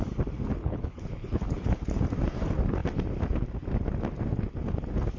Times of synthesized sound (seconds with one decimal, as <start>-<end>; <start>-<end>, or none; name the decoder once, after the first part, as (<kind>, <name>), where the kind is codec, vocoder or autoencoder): 0.6-2.0 (codec, HILCodec)